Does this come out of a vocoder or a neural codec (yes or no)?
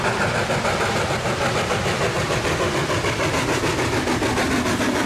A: no